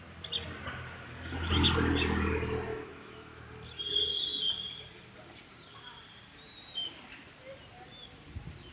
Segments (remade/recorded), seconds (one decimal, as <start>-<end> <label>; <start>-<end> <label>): 0.0-2.7 recorded; 2.7-3.4 remade; 3.4-8.7 recorded